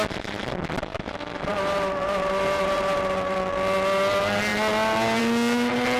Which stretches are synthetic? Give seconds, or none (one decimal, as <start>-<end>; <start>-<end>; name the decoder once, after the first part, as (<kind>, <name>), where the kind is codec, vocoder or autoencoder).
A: 0.9-3.4 (vocoder, BigVGAN v2)